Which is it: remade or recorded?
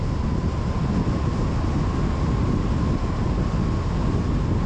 recorded